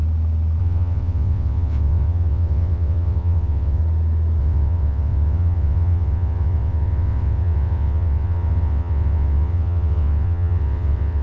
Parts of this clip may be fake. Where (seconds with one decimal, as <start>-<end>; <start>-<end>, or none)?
0.6-3.8; 4.4-11.2